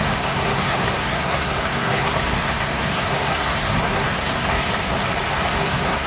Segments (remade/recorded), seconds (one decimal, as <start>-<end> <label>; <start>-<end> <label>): 0.0-4.7 remade; 4.7-5.3 recorded; 5.3-6.1 remade